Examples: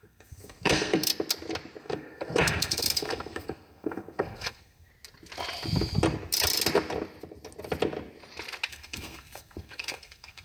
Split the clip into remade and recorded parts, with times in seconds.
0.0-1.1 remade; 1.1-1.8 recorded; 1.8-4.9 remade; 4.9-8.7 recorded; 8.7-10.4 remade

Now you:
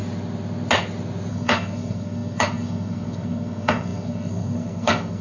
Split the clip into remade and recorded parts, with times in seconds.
0.0-1.3 recorded; 1.3-5.2 remade